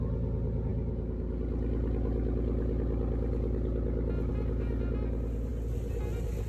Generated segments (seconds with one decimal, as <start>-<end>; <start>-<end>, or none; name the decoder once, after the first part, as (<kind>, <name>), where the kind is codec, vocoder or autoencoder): none